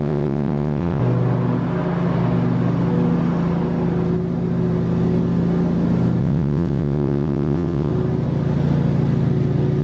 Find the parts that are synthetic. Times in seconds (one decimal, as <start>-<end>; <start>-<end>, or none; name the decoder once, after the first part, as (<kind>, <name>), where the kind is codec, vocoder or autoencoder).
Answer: 0.0-1.0 (vocoder, WaveNeXt); 6.2-7.9